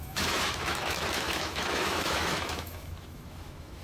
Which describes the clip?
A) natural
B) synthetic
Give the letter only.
B